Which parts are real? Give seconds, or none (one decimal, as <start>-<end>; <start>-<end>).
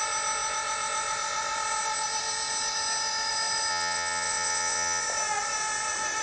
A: 0.0-3.7; 5.0-6.2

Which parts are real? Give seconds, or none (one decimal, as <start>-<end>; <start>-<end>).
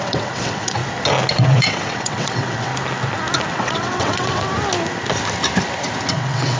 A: 0.8-1.3; 2.7-3.5; 4.5-6.1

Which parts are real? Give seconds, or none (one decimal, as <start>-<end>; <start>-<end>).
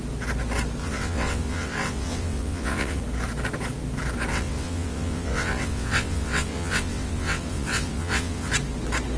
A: 0.0-0.8; 3.0-4.3; 8.5-9.2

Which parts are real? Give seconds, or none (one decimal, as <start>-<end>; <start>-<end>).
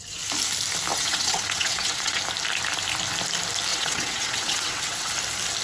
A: 0.0-0.9; 2.2-3.7; 5.1-5.6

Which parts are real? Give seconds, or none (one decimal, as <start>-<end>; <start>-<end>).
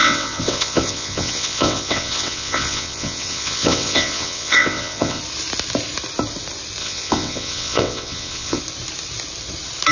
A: 5.2-6.8; 8.6-9.9